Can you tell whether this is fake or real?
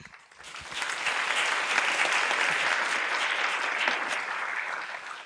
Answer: real